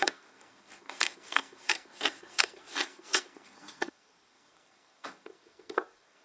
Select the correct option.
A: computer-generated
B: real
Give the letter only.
A